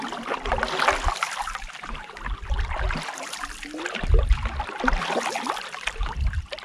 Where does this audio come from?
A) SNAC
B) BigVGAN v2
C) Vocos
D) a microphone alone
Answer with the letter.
D